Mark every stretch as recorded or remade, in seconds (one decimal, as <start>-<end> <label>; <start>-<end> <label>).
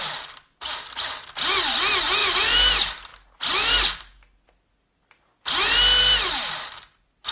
0.0-2.2 recorded; 2.2-2.7 remade; 2.7-7.3 recorded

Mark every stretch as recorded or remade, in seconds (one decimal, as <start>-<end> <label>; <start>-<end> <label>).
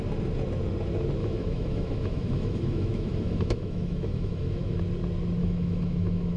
0.0-1.2 recorded; 1.2-4.8 remade; 4.8-5.4 recorded; 5.4-6.4 remade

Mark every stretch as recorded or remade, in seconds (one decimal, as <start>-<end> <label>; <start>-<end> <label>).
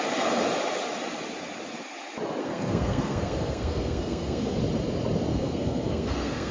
0.0-2.4 recorded; 2.4-4.6 remade; 4.6-5.3 recorded; 5.3-6.5 remade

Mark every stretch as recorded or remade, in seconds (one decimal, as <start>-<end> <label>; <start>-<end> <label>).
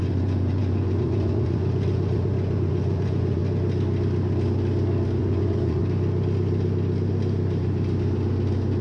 0.0-3.4 remade; 3.4-5.2 recorded; 5.2-5.8 remade; 5.8-8.8 recorded